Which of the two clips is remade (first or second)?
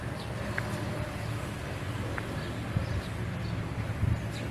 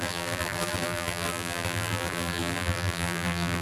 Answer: second